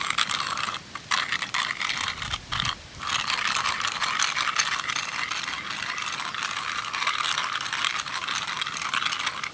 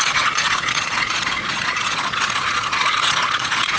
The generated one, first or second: second